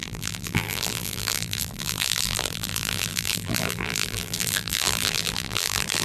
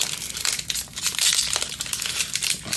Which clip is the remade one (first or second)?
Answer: first